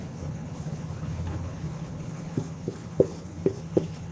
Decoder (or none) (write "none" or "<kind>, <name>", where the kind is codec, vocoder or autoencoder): codec, HILCodec